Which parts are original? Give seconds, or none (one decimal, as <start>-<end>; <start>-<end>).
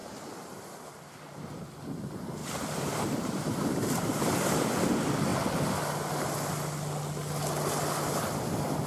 1.7-2.4; 4.6-8.9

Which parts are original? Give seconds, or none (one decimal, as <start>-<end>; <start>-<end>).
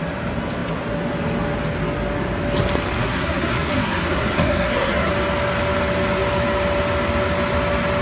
0.0-3.0; 5.1-8.0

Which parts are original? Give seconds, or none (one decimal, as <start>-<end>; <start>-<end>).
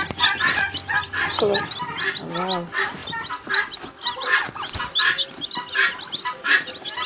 0.0-7.1